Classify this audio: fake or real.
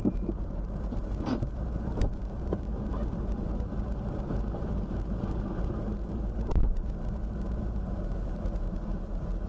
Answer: fake